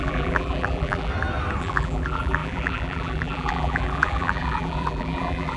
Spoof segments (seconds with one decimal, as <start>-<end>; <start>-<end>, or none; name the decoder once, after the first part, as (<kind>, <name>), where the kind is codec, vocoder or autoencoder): 0.0-1.1 (vocoder, BigVGAN v2); 1.6-5.6